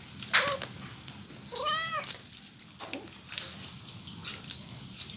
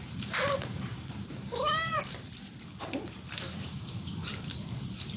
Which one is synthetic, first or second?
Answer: second